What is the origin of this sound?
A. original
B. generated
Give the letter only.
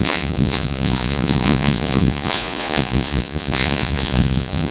B